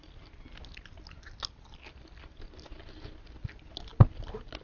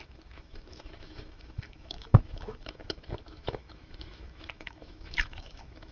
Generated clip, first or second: second